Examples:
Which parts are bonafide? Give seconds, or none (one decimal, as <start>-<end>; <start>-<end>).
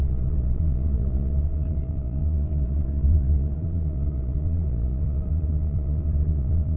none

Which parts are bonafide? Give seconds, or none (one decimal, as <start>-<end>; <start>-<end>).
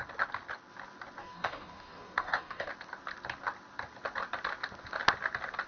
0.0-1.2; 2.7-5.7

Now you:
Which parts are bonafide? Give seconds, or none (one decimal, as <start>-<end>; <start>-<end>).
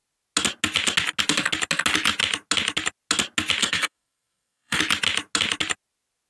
0.0-3.6; 4.8-6.3